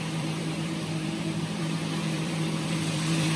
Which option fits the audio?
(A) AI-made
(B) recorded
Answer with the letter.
A